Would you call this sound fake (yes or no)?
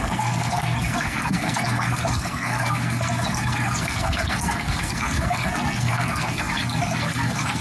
yes